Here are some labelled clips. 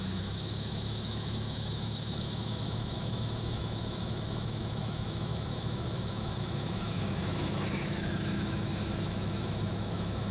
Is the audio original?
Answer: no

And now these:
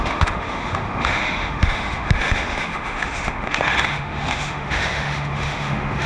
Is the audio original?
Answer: no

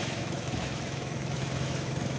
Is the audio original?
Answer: no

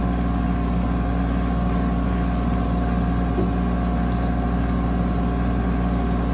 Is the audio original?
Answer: yes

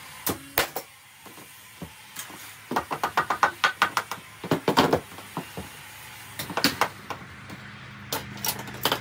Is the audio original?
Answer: yes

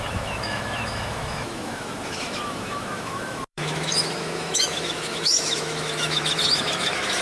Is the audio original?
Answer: no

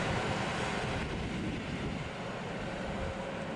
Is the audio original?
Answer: yes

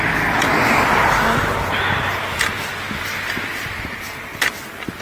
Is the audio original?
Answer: yes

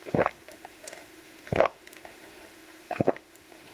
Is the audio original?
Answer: no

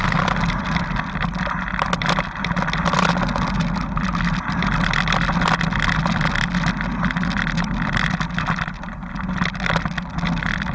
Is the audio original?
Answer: yes